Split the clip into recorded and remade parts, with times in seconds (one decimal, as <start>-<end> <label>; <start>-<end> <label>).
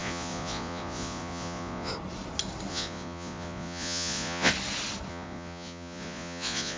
0.0-1.9 remade; 1.9-2.7 recorded; 2.7-4.5 remade; 4.5-5.1 recorded; 5.1-6.8 remade